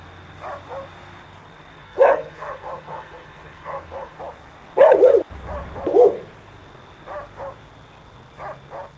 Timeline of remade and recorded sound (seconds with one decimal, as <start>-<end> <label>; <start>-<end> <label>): 0.0-1.8 recorded; 1.8-4.2 remade; 4.2-9.0 recorded